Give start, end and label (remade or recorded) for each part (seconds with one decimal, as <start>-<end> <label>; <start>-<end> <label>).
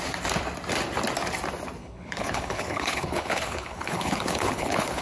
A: 0.0-1.8 recorded; 1.8-5.0 remade